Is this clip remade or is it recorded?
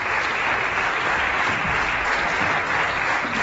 recorded